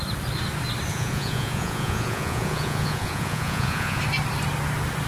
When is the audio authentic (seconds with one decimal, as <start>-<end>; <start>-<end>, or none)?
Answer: 0.0-0.9; 4.0-5.1